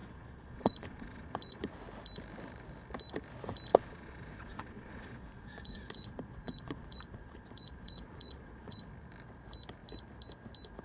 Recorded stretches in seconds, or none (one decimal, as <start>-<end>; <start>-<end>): 1.7-3.7; 8.8-10.8